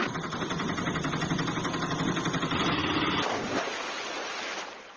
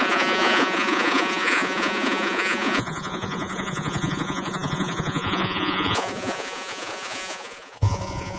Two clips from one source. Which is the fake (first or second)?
second